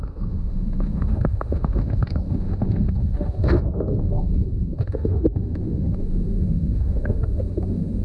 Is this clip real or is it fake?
fake